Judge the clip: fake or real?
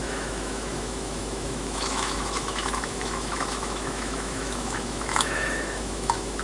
fake